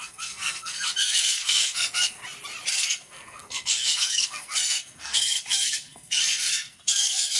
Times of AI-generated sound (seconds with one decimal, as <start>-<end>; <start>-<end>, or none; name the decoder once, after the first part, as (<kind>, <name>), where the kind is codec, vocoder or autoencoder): 0.0-2.2 (codec, SNAC); 2.7-7.4